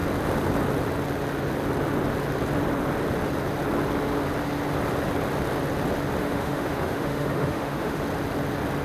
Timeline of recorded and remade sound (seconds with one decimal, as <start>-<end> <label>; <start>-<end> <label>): 0.0-6.2 recorded; 6.2-8.0 remade; 8.0-8.8 recorded